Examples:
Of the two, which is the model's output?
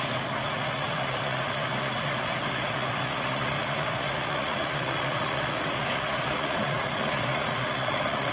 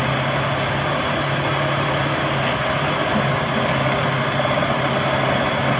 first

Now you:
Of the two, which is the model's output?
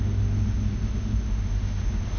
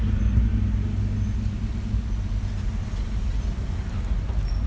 first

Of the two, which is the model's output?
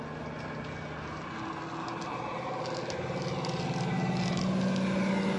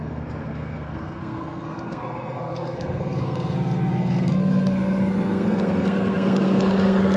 second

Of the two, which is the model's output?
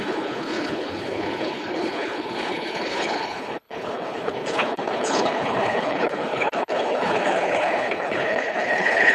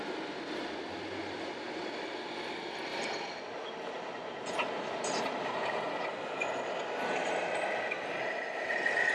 first